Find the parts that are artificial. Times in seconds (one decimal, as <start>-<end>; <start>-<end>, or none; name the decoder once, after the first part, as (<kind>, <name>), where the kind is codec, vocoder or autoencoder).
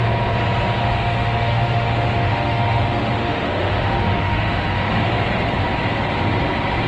0.8-4.9 (autoencoder, DAC-VAE)